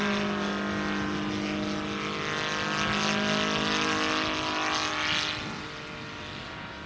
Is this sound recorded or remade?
recorded